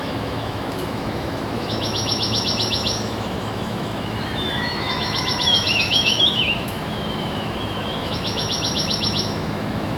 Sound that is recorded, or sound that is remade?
remade